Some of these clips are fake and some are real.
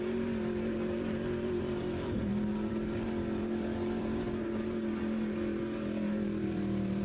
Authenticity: fake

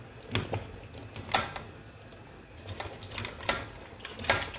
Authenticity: real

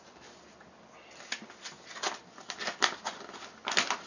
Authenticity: real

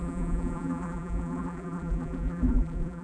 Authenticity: fake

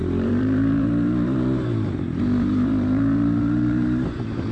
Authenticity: fake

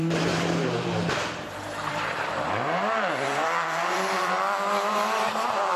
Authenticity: fake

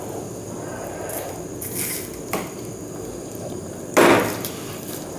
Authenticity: real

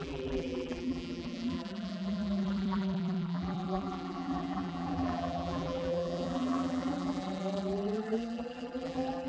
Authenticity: fake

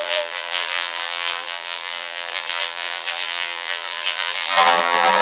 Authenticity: fake